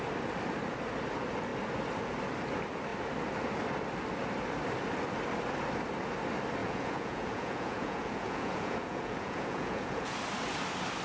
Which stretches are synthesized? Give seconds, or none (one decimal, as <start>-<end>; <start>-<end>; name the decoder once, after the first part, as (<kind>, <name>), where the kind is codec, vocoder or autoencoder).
6.6-10.2 (vocoder, Vocos)